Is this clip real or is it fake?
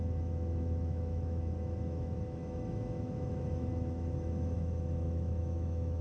fake